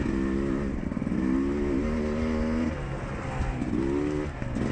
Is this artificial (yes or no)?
no